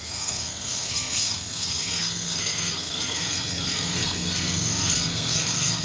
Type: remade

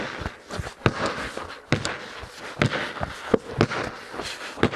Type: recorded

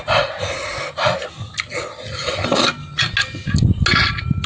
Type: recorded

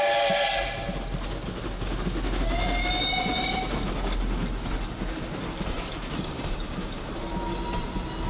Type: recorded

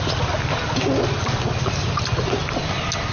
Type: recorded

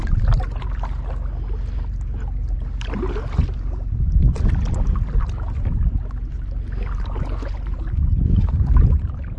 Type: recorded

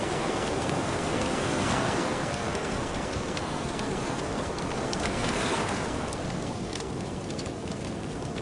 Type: remade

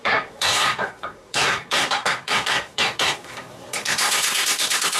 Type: remade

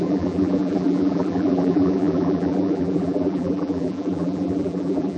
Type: remade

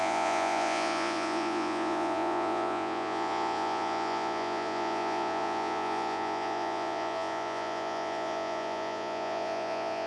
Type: remade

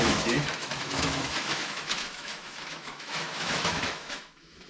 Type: remade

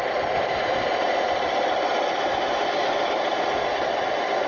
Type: recorded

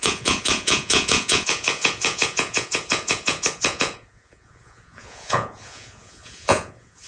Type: remade